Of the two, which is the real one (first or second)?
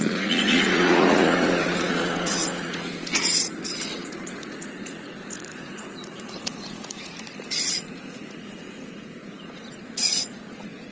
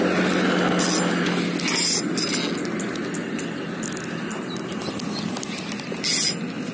second